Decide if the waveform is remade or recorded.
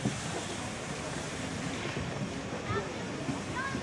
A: recorded